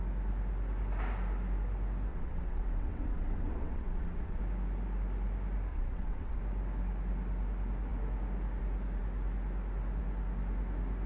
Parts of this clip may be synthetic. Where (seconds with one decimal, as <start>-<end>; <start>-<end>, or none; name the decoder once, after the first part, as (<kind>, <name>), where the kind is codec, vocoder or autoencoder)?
2.1-4.4 (vocoder, WaveNeXt); 5.7-6.4